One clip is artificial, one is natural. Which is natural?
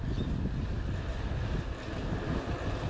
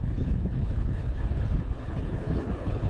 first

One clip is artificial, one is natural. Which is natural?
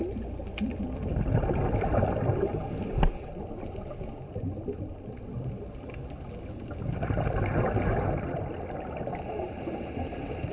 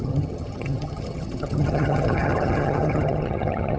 first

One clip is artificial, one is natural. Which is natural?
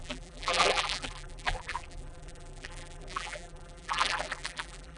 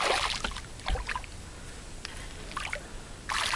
second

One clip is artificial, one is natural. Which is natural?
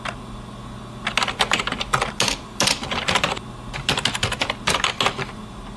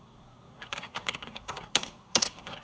first